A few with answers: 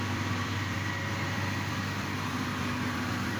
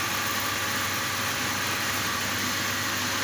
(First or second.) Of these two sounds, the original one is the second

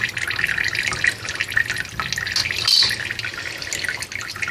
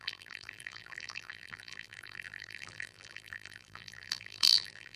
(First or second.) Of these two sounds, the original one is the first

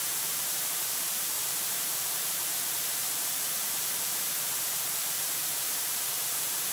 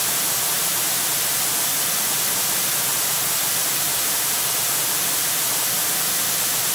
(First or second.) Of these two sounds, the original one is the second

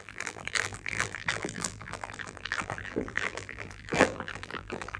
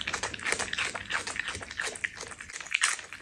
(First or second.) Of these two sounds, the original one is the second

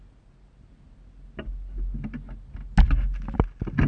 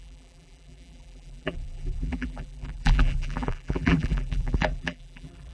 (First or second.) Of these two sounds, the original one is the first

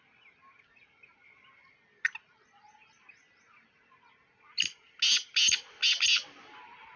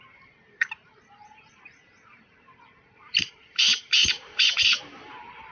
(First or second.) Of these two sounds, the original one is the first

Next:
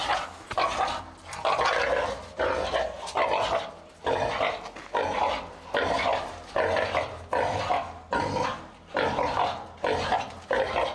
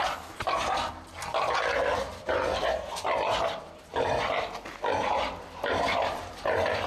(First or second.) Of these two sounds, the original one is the first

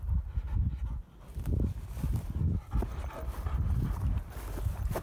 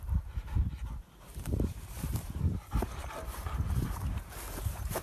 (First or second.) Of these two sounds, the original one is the first